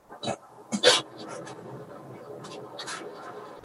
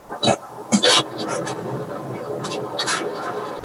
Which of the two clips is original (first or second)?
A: first